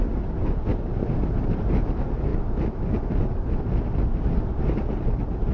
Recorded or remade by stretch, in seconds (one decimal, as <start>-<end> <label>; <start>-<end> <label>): 0.0-5.5 recorded